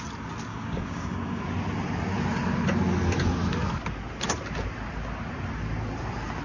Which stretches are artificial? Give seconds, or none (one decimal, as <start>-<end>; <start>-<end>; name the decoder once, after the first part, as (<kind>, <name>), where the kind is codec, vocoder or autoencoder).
0.5-1.4 (codec, DAC)